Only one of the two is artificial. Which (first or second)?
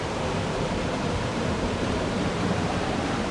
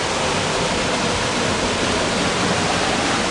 first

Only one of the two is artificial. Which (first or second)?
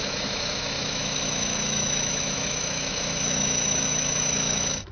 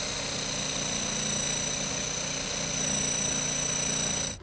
first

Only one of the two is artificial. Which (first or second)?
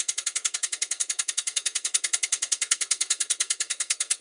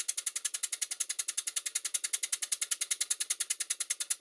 first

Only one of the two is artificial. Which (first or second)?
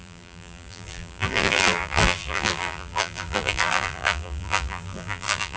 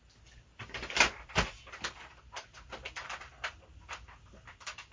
first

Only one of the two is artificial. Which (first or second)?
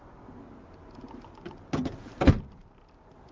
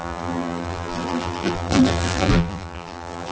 second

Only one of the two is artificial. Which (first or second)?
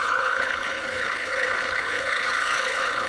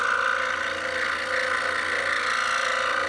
first